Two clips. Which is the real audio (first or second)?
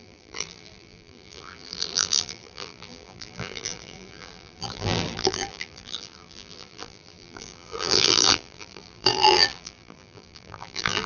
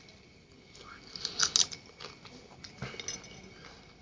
second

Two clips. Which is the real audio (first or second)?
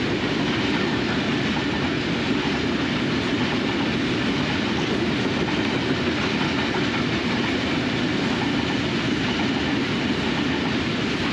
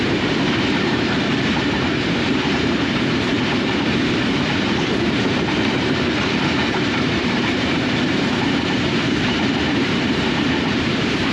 first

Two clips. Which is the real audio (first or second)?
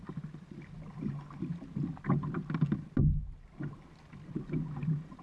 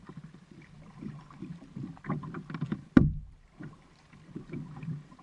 first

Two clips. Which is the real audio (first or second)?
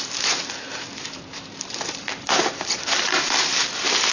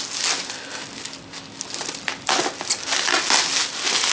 second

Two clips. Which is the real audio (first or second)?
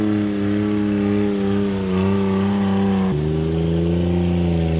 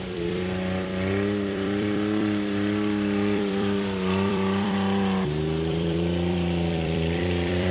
first